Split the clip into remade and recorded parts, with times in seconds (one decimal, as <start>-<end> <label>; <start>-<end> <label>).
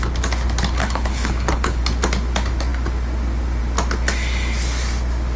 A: 0.0-0.8 recorded; 0.8-1.8 remade; 1.8-5.4 recorded